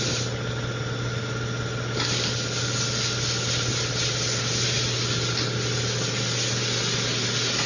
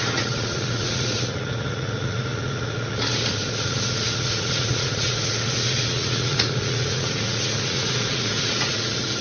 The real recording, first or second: first